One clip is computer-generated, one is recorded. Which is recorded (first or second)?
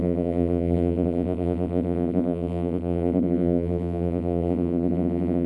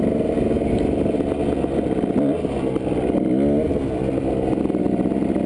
second